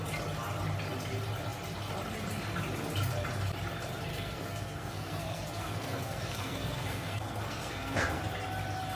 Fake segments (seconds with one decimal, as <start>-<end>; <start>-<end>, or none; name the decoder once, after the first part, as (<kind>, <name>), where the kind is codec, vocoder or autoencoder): 4.1-8.2 (codec, SNAC)